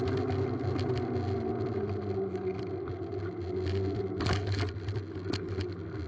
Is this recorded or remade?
recorded